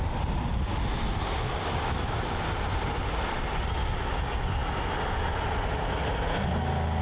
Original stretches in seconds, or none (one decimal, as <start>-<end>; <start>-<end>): 0.0-7.0